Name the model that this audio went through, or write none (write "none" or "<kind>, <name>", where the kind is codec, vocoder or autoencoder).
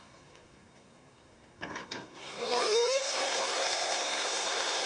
codec, SNAC